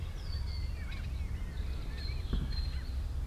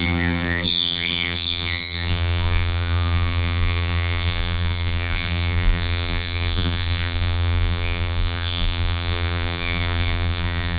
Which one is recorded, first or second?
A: first